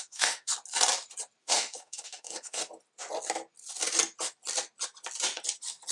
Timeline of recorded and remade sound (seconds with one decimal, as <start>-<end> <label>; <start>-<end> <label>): 0.0-0.5 remade; 0.5-1.4 recorded; 1.4-2.6 remade; 2.6-5.9 recorded